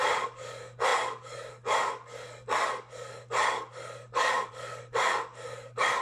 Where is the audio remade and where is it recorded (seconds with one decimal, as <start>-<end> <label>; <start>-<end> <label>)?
0.0-6.0 remade